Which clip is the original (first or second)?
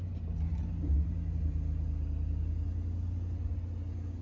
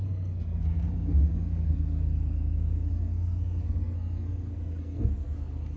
first